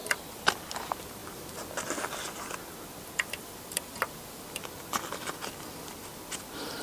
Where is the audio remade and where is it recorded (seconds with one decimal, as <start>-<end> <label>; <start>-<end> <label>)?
0.0-6.8 recorded